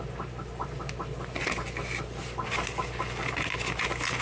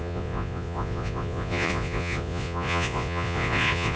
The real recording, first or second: first